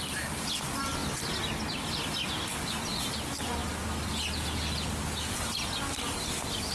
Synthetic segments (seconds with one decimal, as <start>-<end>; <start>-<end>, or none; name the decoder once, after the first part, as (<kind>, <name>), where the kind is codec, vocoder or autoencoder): none